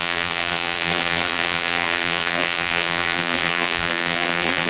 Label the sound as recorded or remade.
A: remade